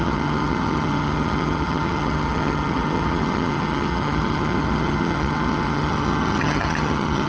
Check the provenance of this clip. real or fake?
fake